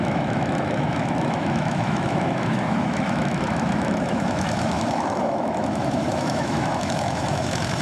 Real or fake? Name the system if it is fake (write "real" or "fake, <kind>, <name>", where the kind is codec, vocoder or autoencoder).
fake, autoencoder, DAC-VAE